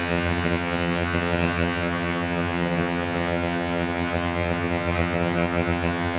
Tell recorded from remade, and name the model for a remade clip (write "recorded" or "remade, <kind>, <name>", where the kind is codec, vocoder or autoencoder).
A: remade, vocoder, HiFi-GAN